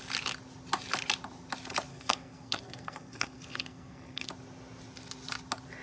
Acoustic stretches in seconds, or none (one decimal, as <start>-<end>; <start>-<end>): 0.0-1.9; 4.3-5.8